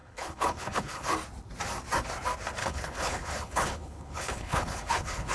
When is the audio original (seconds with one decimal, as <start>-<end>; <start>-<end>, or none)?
1.1-2.6